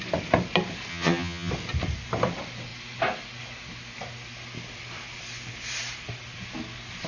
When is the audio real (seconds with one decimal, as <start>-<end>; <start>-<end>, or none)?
0.0-0.9; 1.5-7.1